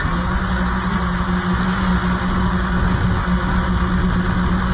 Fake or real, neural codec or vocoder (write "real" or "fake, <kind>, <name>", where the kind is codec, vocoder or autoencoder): real